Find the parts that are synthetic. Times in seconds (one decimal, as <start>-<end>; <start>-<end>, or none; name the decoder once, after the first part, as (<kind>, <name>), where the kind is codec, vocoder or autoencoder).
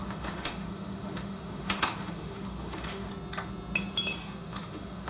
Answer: 0.0-3.1 (autoencoder, DAC-VAE); 4.2-5.1